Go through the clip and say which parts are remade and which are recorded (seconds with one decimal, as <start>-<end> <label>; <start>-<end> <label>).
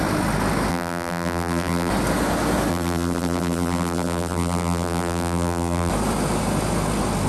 0.0-0.7 recorded; 0.7-1.9 remade; 1.9-2.7 recorded; 2.7-5.9 remade; 5.9-7.3 recorded